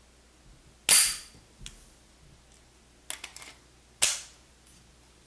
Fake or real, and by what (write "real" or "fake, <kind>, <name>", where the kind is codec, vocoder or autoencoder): real